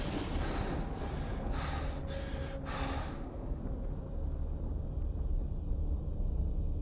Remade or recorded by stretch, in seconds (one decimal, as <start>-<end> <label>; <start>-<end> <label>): 0.0-3.0 recorded; 3.0-3.6 remade; 3.6-6.8 recorded